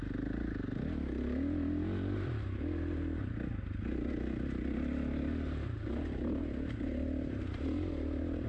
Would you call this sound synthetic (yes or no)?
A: no